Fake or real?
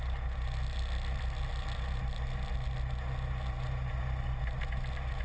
real